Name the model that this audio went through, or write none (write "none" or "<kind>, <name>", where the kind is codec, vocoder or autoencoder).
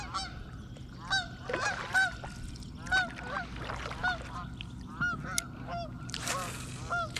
none